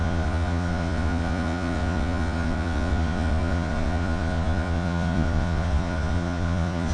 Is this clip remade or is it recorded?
remade